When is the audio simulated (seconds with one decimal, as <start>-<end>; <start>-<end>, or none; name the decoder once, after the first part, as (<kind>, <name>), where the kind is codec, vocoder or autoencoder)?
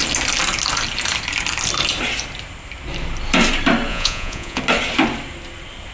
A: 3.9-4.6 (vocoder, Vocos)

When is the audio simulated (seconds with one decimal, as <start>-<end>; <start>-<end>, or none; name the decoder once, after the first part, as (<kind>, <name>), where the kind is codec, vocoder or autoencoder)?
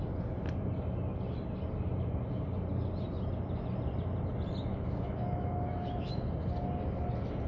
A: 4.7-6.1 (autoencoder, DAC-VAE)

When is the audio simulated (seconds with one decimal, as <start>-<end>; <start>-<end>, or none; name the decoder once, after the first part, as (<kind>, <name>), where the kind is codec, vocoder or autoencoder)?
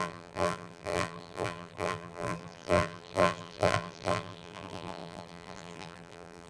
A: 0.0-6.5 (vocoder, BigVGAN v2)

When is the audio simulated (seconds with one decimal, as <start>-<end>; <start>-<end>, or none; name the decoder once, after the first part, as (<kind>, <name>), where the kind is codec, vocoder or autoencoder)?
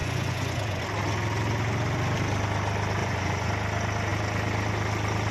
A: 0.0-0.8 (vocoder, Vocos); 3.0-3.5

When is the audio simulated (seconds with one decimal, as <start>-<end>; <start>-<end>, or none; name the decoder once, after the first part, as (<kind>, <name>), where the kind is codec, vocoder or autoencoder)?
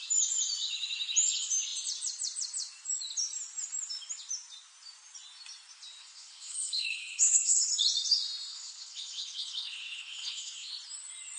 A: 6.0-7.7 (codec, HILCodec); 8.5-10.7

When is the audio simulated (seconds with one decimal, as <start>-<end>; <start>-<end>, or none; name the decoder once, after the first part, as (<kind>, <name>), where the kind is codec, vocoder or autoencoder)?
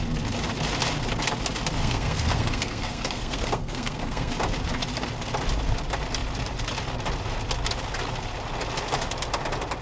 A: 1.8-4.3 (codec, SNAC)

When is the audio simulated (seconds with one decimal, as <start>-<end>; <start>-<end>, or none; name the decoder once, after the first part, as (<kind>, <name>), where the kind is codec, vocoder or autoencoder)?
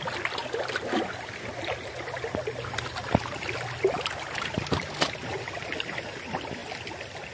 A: none